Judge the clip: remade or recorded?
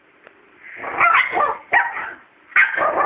recorded